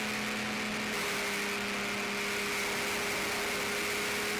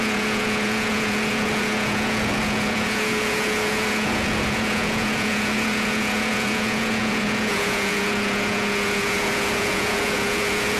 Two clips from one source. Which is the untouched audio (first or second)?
first